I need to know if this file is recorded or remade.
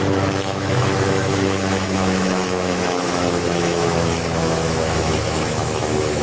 remade